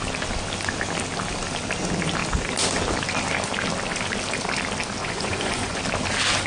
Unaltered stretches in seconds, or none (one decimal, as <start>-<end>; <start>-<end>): 0.0-5.0; 5.8-6.5